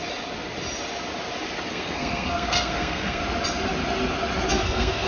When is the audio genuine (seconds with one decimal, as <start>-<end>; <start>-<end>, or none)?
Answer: 0.0-1.7; 3.2-4.5